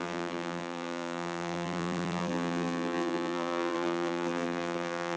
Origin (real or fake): fake